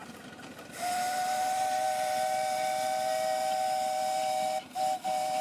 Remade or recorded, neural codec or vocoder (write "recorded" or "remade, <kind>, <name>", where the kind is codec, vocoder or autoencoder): recorded